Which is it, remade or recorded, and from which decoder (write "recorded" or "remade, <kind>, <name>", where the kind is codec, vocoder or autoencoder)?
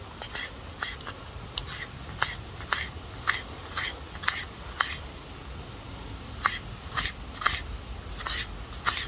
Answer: recorded